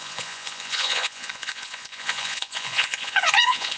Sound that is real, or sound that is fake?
fake